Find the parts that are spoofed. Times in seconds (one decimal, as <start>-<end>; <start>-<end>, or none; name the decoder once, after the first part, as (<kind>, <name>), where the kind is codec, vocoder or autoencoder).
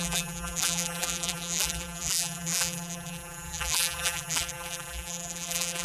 0.0-5.8 (vocoder, BigVGAN v2)